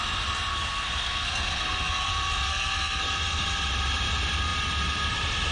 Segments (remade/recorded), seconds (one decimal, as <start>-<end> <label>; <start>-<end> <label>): 0.0-0.5 recorded; 0.5-2.1 remade; 2.1-2.5 recorded; 2.5-3.0 remade; 3.0-5.5 recorded